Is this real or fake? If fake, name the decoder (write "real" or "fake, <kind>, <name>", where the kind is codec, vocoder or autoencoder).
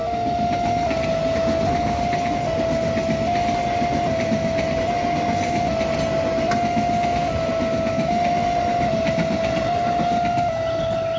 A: real